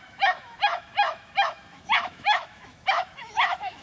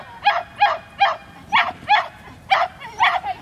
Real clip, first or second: second